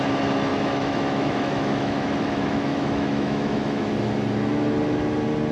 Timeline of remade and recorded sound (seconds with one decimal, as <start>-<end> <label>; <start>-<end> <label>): 0.0-0.5 recorded; 0.5-3.8 remade; 3.8-5.5 recorded